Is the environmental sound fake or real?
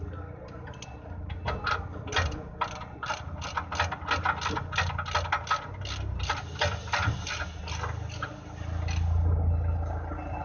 real